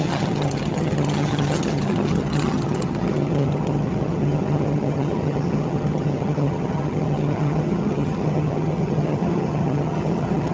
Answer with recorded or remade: remade